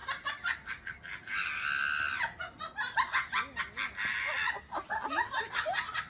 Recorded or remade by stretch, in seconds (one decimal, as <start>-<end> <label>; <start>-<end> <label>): 0.0-6.1 recorded